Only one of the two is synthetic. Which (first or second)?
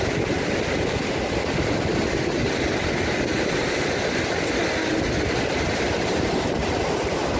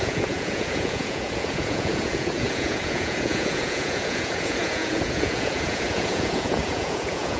second